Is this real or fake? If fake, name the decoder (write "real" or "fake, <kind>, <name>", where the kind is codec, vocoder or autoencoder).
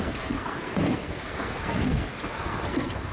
fake, codec, SNAC